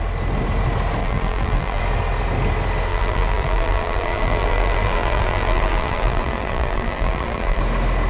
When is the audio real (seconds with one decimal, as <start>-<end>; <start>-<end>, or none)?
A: 0.0-1.0; 1.8-2.9; 7.6-8.1